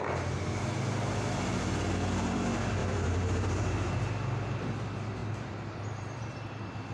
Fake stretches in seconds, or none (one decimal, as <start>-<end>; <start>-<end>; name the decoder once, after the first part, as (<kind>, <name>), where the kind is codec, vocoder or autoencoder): 2.8-4.1 (vocoder, BigVGAN v2); 5.2-6.4